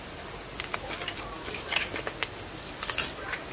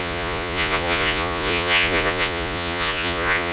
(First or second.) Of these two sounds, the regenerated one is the second